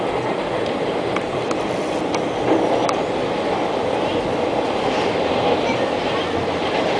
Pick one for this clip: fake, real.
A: fake